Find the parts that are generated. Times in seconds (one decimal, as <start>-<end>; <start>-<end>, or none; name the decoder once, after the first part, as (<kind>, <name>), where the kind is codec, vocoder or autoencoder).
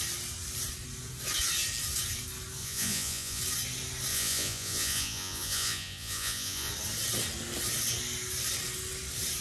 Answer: 2.6-3.4 (vocoder, Vocos); 4.1-6.7